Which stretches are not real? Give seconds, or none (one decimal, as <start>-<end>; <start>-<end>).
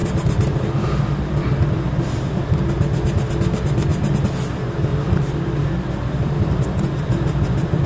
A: 0.0-2.4; 4.9-7.9